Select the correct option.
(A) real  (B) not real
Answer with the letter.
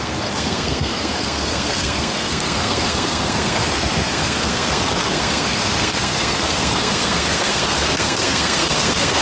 B